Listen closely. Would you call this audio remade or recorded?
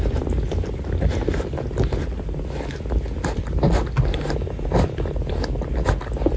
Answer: recorded